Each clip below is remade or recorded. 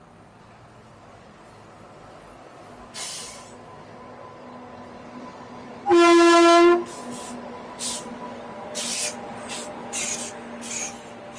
recorded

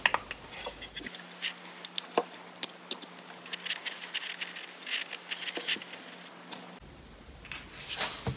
recorded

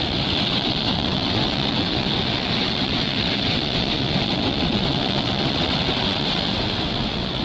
remade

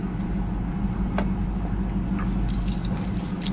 recorded